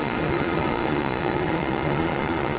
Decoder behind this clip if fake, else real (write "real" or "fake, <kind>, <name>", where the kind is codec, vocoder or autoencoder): fake, vocoder, Vocos